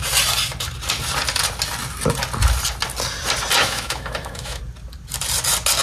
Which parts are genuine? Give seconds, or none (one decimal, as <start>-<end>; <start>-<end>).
0.0-3.6; 4.6-5.8